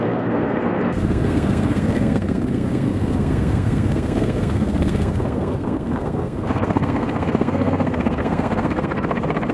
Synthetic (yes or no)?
yes